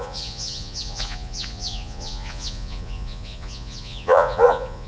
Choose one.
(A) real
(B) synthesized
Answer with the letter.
B